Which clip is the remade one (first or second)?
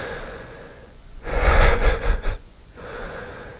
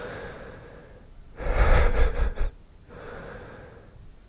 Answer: first